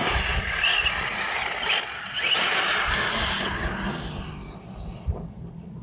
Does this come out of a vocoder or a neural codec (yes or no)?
no